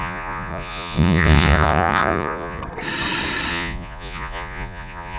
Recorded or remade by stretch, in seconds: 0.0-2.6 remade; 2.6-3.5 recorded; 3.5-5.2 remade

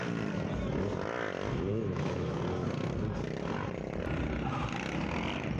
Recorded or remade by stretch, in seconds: 0.0-1.7 recorded; 1.7-2.4 remade; 2.4-5.6 recorded

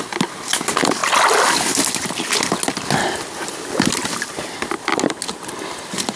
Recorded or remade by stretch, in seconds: 0.0-6.2 recorded

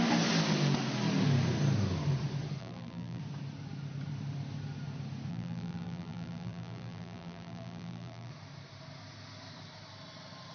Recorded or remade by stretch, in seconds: 0.0-2.6 recorded; 2.6-3.2 remade; 3.2-5.3 recorded; 5.3-8.3 remade; 8.3-10.5 recorded